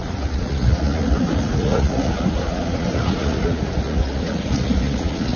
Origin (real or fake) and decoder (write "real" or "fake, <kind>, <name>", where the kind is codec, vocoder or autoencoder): fake, vocoder, Vocos